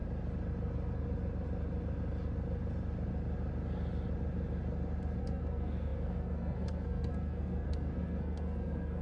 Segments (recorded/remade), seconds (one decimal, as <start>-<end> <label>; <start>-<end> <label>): 0.0-5.2 recorded; 5.2-9.0 remade